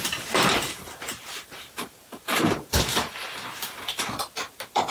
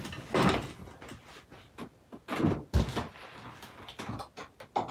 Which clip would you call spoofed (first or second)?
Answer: first